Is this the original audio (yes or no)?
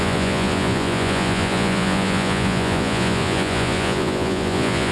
no